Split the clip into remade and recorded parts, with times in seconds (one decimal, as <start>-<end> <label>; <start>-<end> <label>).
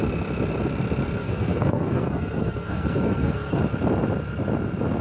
0.0-1.2 recorded; 1.2-3.6 remade; 3.6-5.0 recorded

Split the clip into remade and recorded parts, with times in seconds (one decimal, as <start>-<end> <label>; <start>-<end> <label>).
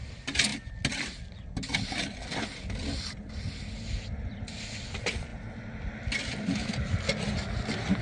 0.0-8.0 recorded